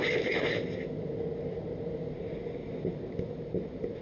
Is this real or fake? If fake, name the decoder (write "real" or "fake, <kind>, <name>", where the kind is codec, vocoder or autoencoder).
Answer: real